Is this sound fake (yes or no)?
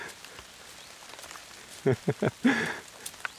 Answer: no